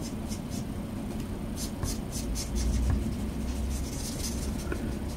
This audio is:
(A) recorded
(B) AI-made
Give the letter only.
A